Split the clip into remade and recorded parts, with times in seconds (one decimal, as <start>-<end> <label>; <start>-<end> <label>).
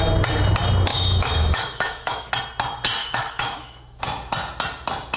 0.0-0.9 recorded; 0.9-2.3 remade; 2.3-3.0 recorded; 3.0-4.0 remade; 4.0-5.2 recorded